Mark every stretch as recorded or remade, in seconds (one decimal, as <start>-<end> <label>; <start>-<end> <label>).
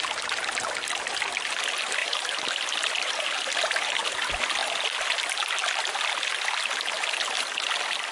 0.0-2.0 recorded; 2.0-4.1 remade; 4.1-8.1 recorded